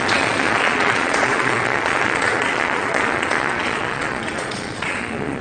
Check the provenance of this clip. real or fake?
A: fake